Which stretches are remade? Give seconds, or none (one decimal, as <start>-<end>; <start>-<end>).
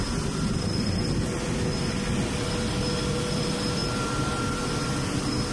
none